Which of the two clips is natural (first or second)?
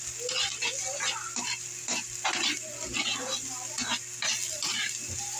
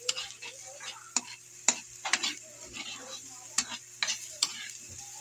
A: first